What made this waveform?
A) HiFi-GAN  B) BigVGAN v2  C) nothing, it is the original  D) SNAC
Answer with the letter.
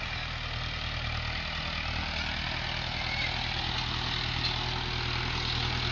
C